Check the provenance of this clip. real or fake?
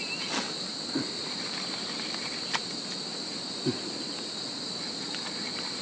real